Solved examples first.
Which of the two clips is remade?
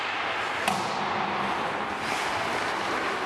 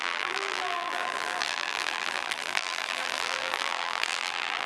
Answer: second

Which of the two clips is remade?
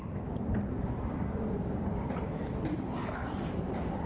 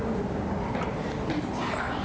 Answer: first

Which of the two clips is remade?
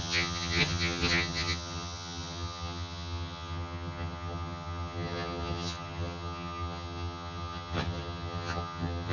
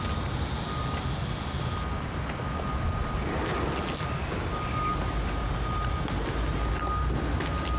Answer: first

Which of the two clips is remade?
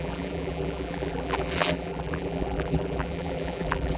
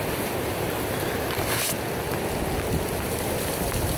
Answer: first